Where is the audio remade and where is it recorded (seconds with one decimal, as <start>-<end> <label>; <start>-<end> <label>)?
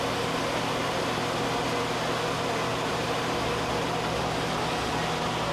0.0-5.5 recorded